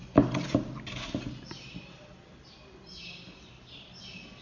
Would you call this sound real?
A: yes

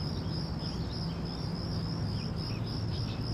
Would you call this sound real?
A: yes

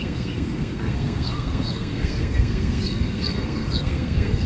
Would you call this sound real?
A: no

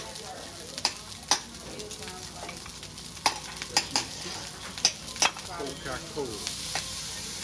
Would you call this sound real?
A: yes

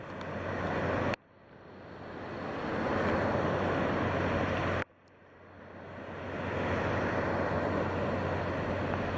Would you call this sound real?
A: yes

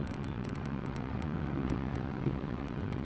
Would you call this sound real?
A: no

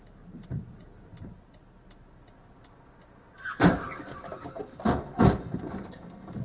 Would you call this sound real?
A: yes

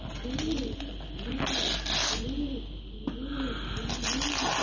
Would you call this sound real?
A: yes